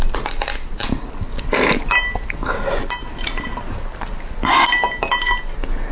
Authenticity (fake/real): real